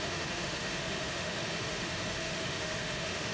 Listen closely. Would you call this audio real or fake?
fake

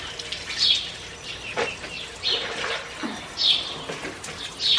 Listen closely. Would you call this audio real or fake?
real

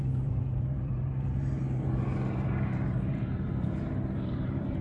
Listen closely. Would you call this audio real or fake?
fake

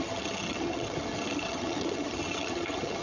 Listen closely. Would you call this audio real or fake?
fake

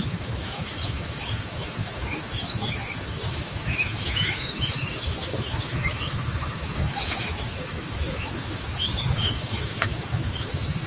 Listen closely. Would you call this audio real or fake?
fake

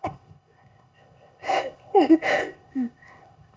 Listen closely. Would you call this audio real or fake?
fake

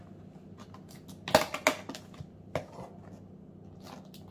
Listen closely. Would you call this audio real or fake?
real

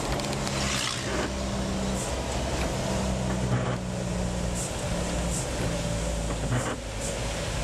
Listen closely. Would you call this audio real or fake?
real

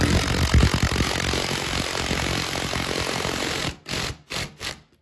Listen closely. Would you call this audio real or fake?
real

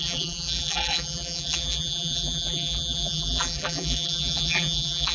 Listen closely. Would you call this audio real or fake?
fake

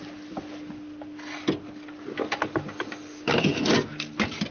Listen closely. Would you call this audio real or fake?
real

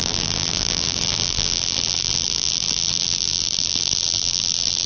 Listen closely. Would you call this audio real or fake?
fake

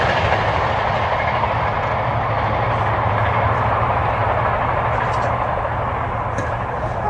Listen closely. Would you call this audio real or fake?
real